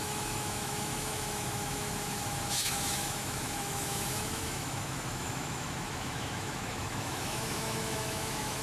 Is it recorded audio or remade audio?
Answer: remade